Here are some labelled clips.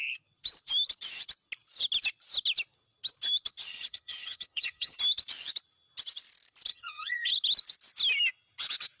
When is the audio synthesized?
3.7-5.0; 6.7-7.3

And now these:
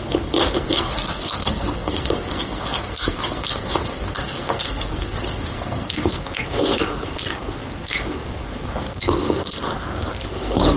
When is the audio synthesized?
0.0-10.8